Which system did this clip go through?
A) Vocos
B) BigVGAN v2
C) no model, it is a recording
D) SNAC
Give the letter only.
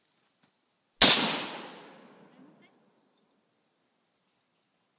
C